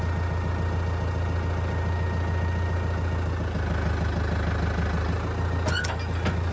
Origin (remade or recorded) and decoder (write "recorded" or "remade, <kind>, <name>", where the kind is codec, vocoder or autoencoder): recorded